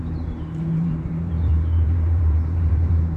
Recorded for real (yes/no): no